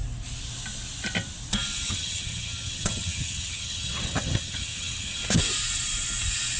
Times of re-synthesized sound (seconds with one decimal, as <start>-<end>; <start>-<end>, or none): 1.9-5.2

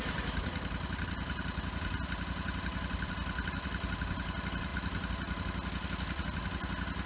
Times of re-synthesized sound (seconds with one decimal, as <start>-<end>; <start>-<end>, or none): none

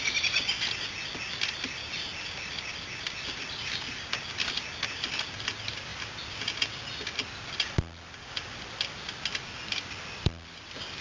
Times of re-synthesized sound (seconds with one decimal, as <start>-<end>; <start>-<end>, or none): none

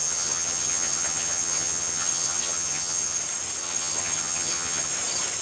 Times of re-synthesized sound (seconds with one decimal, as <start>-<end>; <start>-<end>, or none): 0.0-3.2; 3.6-4.9